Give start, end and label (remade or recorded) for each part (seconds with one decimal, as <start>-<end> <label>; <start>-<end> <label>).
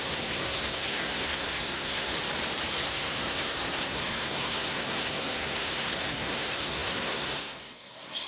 0.0-2.1 remade; 2.1-2.7 recorded; 2.7-8.3 remade